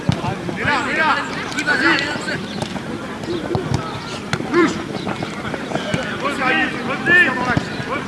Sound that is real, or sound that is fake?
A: fake